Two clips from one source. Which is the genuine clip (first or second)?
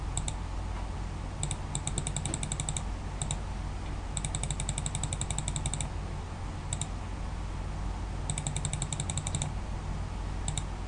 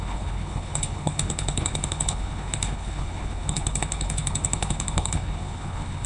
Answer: first